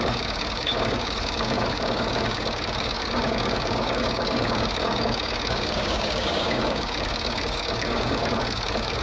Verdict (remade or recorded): remade